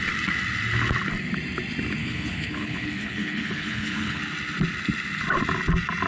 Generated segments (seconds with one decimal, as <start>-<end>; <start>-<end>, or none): 2.0-4.2